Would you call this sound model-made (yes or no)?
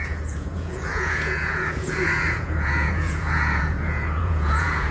yes